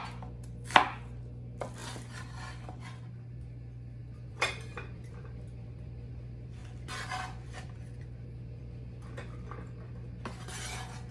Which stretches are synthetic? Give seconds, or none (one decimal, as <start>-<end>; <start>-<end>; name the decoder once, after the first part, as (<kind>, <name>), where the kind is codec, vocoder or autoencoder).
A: 4.0-6.1 (vocoder, BigVGAN v2); 6.6-8.6